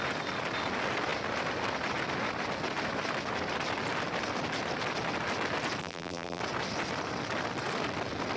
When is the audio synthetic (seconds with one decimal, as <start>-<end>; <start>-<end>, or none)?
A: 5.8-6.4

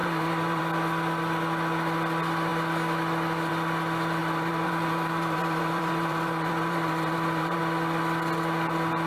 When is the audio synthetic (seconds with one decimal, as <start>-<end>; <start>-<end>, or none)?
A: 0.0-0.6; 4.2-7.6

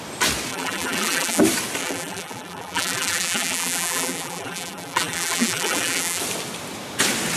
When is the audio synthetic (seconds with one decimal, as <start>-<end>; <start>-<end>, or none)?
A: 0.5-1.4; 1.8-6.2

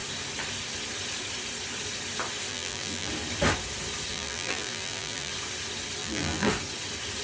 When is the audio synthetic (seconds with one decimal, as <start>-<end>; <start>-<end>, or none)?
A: 2.5-3.1; 4.1-5.3; 6.0-6.5

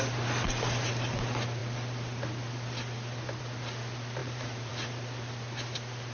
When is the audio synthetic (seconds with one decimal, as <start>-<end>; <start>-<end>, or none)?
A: 4.2-4.7